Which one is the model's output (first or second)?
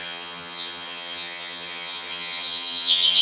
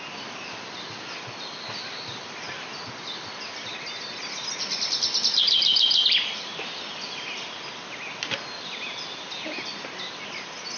first